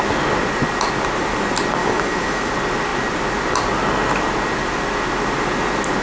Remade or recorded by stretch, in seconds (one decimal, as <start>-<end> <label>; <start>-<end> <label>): 0.0-1.8 recorded; 1.8-2.5 remade; 2.5-6.0 recorded